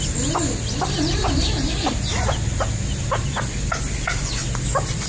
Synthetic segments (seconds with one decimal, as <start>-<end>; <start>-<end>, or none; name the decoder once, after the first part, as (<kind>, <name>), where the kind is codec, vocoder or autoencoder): 4.4-5.1 (vocoder, BigVGAN v2)